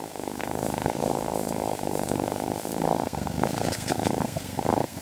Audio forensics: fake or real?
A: fake